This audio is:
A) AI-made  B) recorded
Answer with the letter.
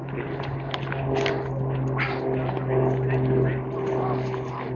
B